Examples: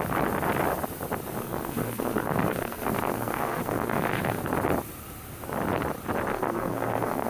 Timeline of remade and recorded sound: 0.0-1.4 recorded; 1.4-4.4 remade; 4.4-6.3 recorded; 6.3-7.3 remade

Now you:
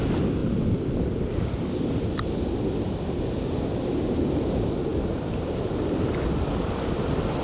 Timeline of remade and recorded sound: 0.0-4.9 recorded; 4.9-5.7 remade; 5.7-7.4 recorded

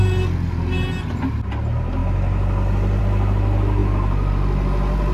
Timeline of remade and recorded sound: 0.0-5.1 recorded

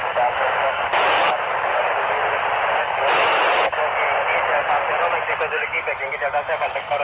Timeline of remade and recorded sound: 0.0-2.2 remade; 2.2-2.8 recorded; 2.8-3.8 remade; 3.8-5.5 recorded; 5.5-7.0 remade